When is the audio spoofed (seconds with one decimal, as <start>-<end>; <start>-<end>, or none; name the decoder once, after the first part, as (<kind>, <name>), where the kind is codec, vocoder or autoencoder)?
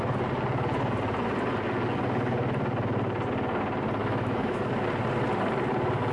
4.0-4.6 (autoencoder, DAC-VAE)